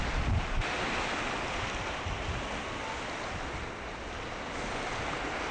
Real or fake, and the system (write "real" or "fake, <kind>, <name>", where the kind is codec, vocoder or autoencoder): real